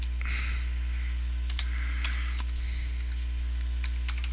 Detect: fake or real real